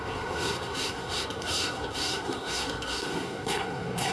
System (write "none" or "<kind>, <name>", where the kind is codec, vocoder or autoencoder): codec, SNAC